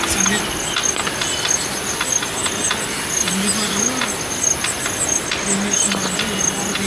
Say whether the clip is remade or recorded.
recorded